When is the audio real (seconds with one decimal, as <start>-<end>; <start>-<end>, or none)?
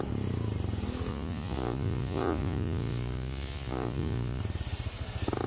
0.0-1.1; 4.4-5.5